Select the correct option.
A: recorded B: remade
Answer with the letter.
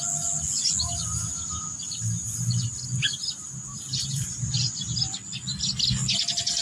A